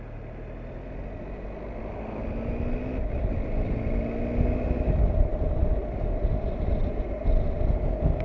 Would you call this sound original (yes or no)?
yes